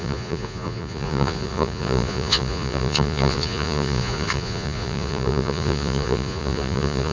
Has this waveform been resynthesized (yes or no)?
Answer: yes